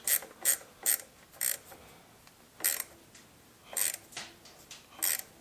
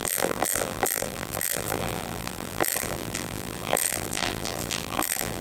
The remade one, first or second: second